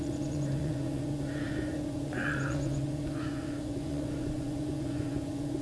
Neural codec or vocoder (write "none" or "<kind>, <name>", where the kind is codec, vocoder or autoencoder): vocoder, Vocos